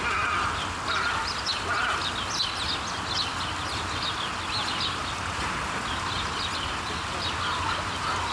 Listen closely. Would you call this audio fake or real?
real